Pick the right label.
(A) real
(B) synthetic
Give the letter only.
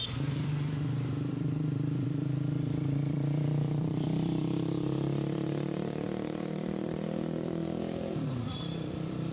B